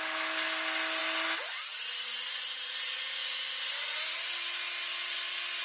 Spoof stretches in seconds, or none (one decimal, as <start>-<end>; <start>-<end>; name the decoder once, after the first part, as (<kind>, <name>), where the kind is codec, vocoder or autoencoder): none